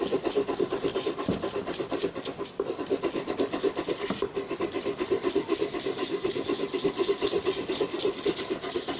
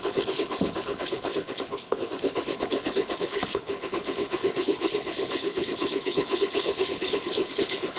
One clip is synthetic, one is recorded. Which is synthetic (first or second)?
second